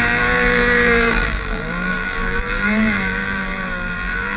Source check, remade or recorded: remade